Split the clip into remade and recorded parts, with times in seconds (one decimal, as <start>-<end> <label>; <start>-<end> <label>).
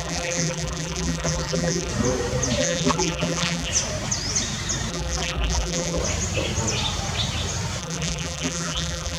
0.0-1.9 remade; 1.9-2.6 recorded; 2.6-3.7 remade; 3.7-4.9 recorded; 4.9-6.0 remade; 6.0-7.8 recorded; 7.8-9.2 remade